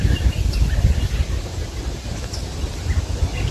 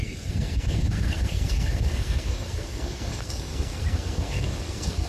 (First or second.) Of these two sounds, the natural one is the first